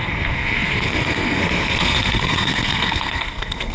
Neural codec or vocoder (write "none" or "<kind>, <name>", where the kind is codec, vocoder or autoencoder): codec, SNAC